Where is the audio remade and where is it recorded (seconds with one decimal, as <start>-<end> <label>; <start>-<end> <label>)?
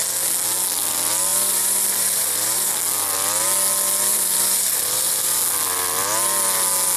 0.0-1.3 recorded; 1.3-2.8 remade; 2.8-4.1 recorded; 4.1-5.4 remade; 5.4-7.0 recorded